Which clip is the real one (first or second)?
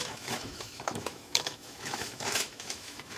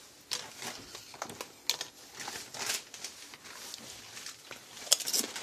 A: second